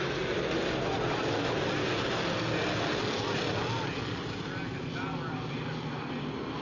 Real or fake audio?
real